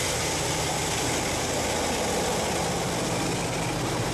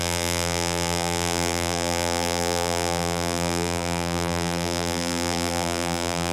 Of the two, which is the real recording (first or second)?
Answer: first